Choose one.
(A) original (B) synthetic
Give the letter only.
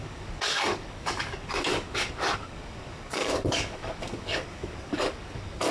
B